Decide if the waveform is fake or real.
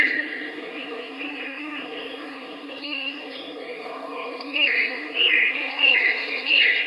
fake